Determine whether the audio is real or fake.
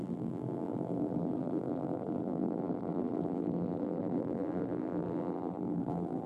fake